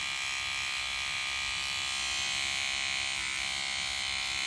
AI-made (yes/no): yes